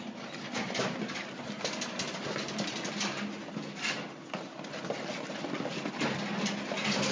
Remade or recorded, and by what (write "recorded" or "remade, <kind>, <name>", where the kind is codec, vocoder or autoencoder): recorded